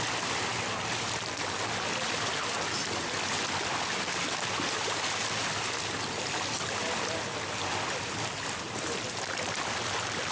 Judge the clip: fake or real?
real